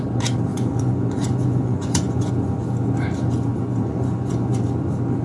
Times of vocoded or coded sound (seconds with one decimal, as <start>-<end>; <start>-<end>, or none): 0.5-2.3; 3.5-4.6